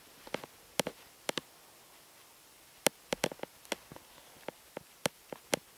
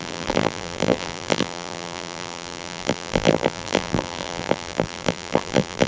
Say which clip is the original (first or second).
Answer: first